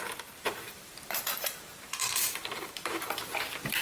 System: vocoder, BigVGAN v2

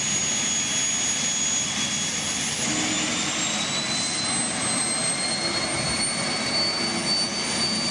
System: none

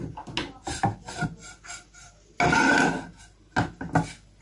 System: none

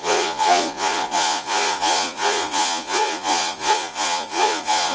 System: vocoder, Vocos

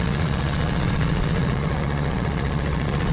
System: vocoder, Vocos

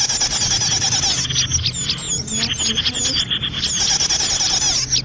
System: none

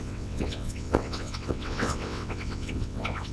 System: vocoder, WaveNeXt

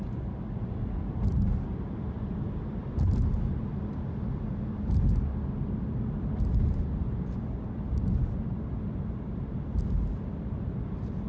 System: none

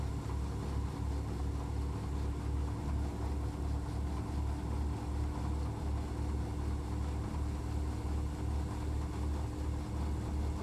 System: none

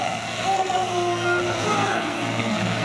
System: codec, SNAC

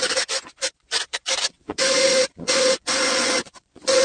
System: vocoder, Vocos